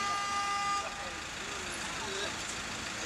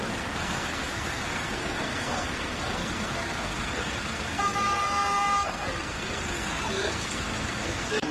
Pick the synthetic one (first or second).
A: second